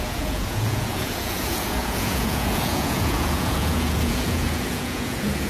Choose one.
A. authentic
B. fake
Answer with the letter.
B